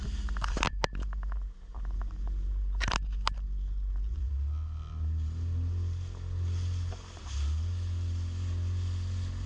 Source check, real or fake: real